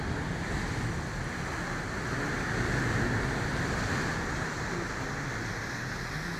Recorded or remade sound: recorded